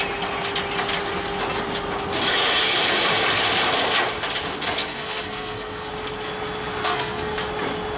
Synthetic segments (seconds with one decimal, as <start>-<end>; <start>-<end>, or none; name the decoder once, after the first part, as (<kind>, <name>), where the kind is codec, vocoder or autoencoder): 4.8-5.9 (codec, SNAC); 6.8-7.4

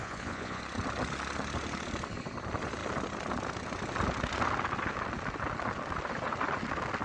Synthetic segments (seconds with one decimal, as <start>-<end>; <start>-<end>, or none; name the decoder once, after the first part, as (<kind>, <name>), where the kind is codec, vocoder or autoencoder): 0.0-0.6 (vocoder, Vocos)

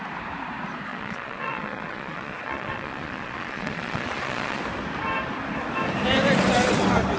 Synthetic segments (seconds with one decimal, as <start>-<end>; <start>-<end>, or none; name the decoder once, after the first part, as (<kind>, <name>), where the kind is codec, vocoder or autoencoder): 0.9-4.6 (vocoder, Vocos)

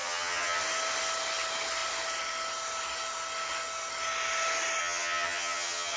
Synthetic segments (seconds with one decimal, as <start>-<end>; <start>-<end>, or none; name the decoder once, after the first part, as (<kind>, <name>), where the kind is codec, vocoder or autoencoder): 0.0-0.6 (vocoder, HiFi-GAN); 4.8-6.0

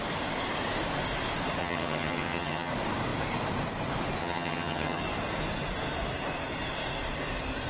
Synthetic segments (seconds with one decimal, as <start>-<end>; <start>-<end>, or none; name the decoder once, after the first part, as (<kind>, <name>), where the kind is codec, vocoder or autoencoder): 1.6-2.7 (vocoder, HiFi-GAN); 4.2-5.0

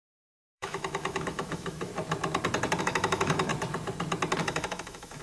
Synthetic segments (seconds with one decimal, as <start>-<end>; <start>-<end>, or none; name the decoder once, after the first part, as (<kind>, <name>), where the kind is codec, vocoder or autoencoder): 0.0-1.9 (autoencoder, DAC-VAE); 2.8-3.5; 4.4-5.2